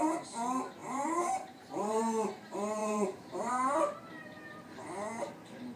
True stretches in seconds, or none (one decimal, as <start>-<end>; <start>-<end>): 0.0-0.8; 2.0-2.8; 3.7-5.8